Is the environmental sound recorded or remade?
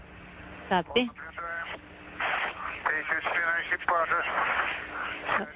recorded